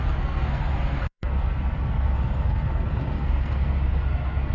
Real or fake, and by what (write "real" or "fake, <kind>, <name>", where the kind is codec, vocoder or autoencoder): fake, codec, SNAC